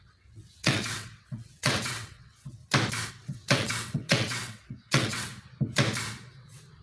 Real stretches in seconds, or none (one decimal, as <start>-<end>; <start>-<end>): 2.6-3.1; 5.3-6.3